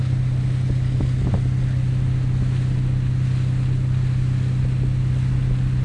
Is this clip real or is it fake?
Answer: real